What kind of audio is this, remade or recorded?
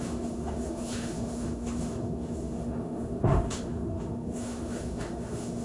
remade